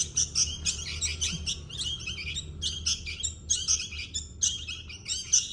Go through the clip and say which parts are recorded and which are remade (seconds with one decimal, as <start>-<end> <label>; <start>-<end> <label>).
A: 0.0-5.5 recorded